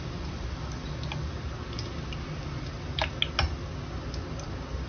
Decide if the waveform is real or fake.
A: real